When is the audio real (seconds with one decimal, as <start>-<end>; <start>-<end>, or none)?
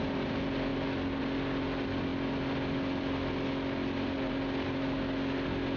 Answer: 0.0-5.8